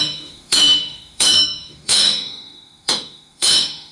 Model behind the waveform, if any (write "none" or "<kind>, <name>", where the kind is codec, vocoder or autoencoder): autoencoder, DAC-VAE